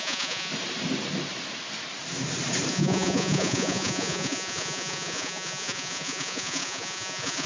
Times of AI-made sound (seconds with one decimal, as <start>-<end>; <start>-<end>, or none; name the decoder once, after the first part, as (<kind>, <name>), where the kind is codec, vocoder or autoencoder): 0.0-0.5 (vocoder, Vocos); 2.7-7.5